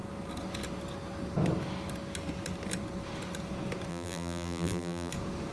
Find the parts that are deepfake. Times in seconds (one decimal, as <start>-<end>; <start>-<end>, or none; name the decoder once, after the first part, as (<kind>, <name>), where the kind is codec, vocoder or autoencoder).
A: 3.9-5.1 (vocoder, BigVGAN v2)